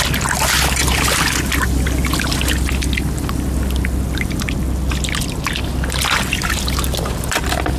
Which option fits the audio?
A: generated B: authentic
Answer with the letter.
B